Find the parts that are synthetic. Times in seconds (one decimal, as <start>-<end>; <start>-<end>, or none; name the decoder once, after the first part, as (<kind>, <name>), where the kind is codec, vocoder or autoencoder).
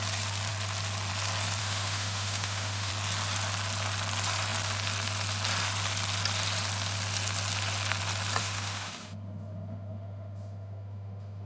1.6-2.9 (autoencoder, DAC-VAE); 8.4-11.5